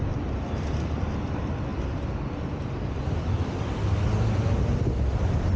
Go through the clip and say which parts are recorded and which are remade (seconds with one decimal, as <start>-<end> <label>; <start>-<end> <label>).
0.0-5.6 recorded